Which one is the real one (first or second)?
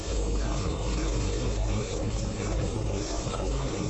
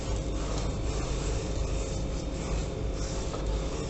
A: second